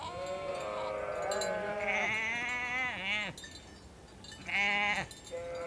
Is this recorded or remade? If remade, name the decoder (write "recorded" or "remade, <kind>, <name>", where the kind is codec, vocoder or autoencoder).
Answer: recorded